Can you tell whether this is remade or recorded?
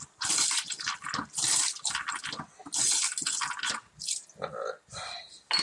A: recorded